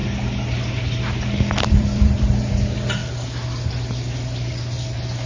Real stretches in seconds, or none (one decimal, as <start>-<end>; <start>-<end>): 0.0-1.7; 3.0-5.3